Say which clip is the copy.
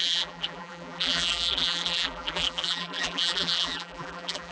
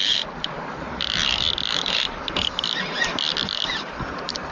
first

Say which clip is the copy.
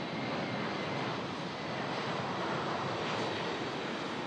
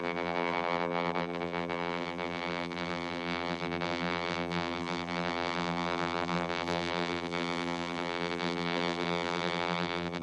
second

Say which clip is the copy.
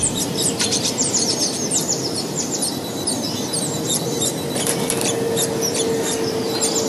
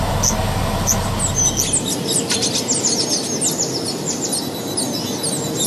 first